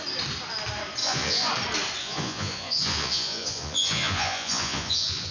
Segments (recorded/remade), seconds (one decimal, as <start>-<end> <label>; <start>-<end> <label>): 0.0-1.0 recorded; 1.0-1.5 remade; 1.5-2.0 recorded; 2.0-5.3 remade